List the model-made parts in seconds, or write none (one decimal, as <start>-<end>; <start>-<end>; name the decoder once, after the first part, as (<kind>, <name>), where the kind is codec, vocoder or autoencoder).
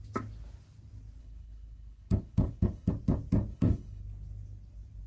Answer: 1.2-2.9 (codec, HILCodec); 3.5-4.0